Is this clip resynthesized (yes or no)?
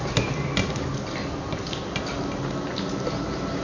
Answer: no